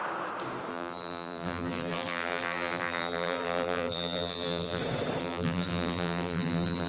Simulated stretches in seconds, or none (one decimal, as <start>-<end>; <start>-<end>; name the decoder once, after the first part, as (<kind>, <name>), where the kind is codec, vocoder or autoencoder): 0.7-4.8 (vocoder, BigVGAN v2); 5.2-6.9